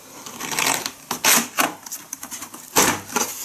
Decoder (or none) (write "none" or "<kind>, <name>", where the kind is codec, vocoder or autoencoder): vocoder, BigVGAN v2